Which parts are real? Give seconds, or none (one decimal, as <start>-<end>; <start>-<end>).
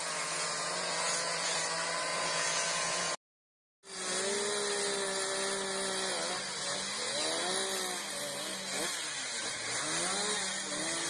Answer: 1.6-2.1; 3.1-11.1